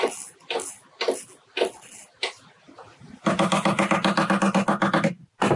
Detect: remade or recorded recorded